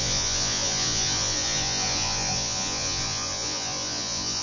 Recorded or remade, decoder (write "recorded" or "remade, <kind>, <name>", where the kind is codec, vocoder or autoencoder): remade, vocoder, Vocos